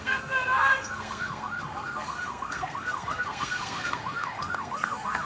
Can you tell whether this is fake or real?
fake